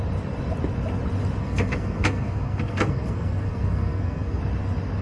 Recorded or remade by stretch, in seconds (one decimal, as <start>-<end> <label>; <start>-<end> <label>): 0.0-1.4 recorded; 1.4-4.4 remade; 4.4-5.0 recorded